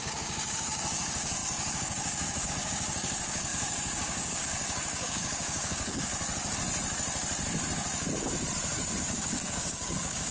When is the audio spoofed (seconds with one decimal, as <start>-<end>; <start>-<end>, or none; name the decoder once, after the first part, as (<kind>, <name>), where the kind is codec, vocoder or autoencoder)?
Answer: 0.0-6.1 (codec, DAC); 9.0-10.3